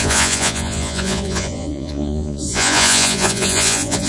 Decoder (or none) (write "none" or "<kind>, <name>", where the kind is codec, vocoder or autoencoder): vocoder, Vocos